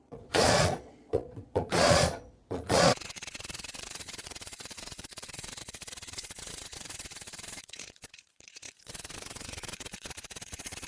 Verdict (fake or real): fake